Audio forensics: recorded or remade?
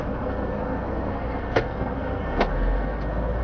remade